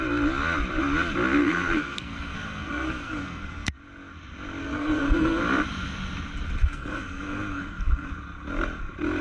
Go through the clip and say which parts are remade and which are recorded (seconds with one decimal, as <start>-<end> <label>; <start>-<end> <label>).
0.0-1.4 recorded; 1.4-3.7 remade; 3.7-4.6 recorded; 4.6-5.4 remade; 5.4-6.6 recorded; 6.6-8.1 remade; 8.1-9.2 recorded